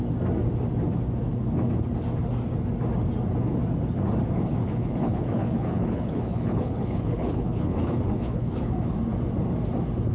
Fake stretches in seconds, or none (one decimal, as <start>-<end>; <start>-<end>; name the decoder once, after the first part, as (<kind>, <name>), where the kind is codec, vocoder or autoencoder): 4.6-8.7 (codec, HILCodec)